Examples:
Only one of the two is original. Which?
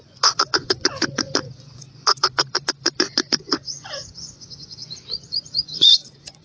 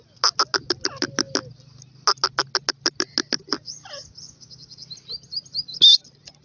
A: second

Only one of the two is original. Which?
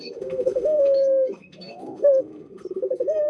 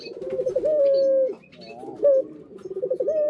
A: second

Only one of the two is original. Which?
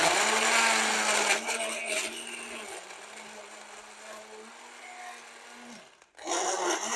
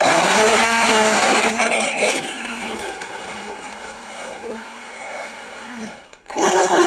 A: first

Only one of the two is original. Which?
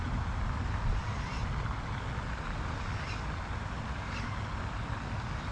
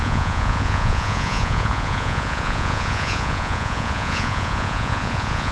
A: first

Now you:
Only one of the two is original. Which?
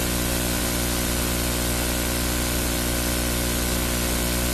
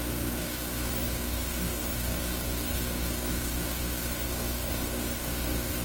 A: first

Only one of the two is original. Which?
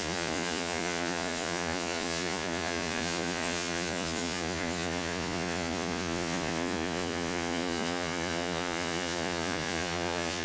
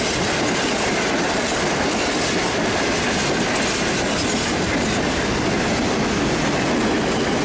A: second